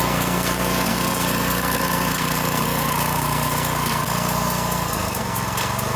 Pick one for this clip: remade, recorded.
remade